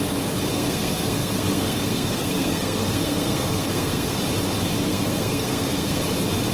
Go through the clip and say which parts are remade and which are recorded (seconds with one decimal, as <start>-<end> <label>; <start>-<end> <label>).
0.0-0.5 recorded; 0.5-4.2 remade; 4.2-4.9 recorded; 4.9-6.0 remade; 6.0-6.5 recorded